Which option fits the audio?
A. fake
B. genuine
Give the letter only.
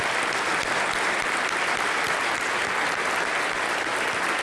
B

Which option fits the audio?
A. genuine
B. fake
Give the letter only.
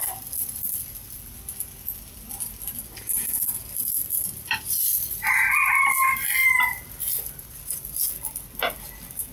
A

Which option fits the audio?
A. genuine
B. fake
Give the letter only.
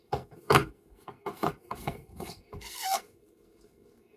B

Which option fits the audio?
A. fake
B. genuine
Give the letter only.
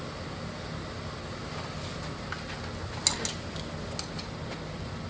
B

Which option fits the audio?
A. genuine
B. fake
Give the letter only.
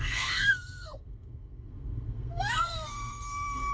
B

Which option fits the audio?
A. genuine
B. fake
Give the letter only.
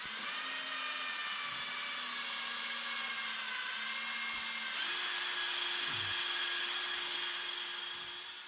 A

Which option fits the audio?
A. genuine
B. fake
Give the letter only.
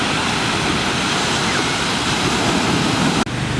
A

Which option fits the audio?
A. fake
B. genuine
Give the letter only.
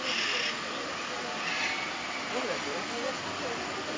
B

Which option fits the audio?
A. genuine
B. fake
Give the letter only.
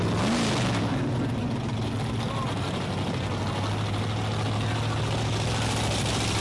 A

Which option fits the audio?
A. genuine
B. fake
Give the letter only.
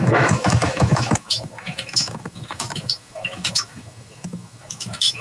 B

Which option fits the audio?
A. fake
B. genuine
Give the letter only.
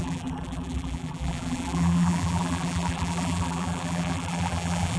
A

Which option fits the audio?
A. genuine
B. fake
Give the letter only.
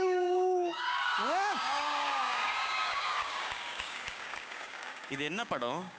B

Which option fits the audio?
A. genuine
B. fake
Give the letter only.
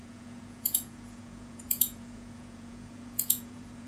B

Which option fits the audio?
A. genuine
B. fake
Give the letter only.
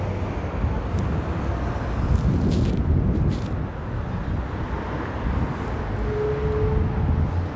A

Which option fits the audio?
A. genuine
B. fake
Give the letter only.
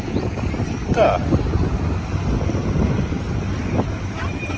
A